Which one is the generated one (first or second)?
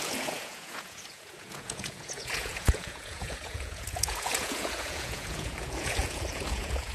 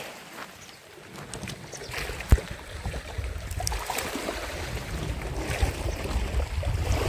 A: first